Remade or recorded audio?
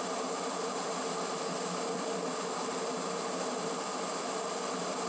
recorded